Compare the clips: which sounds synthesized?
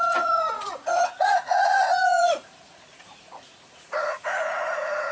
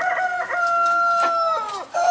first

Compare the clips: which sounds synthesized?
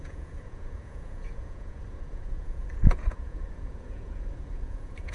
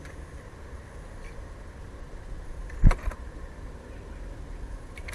first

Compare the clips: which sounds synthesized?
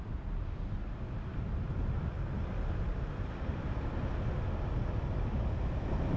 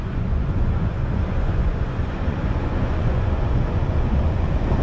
second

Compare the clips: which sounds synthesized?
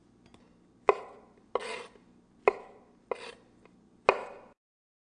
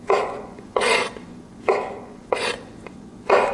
second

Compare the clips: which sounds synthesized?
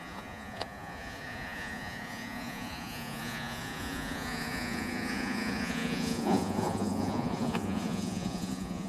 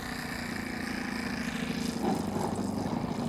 first